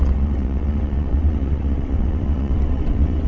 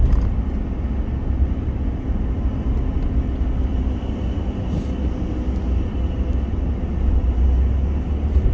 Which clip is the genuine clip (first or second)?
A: second